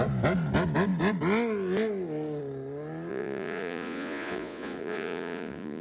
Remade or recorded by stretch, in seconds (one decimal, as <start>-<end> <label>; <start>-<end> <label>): 0.0-3.1 recorded; 3.1-5.8 remade